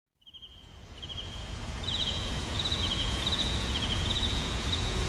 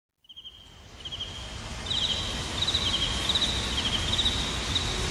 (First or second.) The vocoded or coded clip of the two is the first